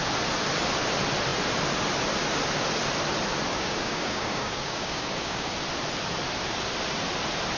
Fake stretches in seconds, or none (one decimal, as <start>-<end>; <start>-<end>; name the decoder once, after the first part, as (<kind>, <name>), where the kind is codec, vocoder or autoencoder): 3.5-5.5 (codec, DAC)